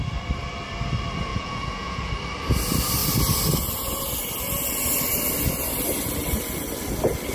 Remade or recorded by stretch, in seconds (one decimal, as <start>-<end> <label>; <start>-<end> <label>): 0.0-1.3 recorded; 1.3-2.1 remade; 2.1-7.3 recorded